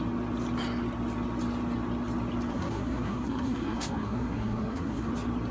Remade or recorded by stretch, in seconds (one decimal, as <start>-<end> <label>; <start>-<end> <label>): 0.0-2.5 recorded; 2.5-5.1 remade; 5.1-5.5 recorded